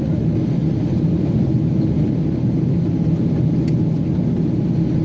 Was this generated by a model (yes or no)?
no